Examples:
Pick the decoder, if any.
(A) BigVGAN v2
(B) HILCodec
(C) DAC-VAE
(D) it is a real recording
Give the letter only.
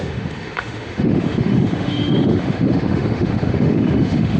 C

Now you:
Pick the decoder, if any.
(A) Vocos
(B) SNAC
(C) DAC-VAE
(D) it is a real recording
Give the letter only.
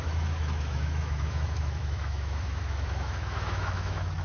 C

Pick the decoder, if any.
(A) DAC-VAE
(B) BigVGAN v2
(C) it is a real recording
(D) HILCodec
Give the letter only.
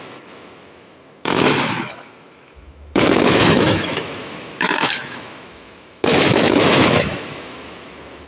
A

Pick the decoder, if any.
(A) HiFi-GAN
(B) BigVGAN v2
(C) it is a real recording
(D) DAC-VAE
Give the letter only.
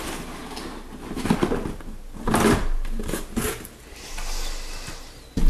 C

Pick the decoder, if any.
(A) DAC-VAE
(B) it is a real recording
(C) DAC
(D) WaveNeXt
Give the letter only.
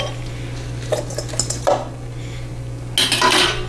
B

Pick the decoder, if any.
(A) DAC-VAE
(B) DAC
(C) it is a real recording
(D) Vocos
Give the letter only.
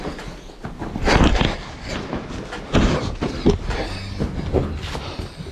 C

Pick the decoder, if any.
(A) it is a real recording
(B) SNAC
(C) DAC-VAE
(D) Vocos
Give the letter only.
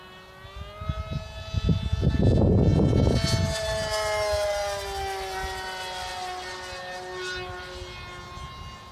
A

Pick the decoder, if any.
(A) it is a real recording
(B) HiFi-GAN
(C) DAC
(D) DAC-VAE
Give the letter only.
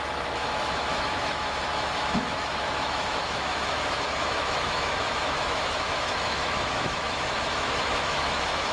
D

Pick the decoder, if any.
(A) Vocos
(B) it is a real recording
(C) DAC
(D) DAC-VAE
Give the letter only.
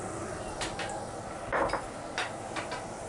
B